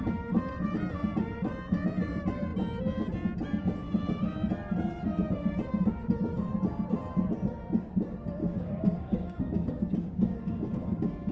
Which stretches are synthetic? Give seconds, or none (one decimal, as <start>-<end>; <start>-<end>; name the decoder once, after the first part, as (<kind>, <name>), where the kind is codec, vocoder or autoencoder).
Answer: 8.4-11.3 (codec, DAC)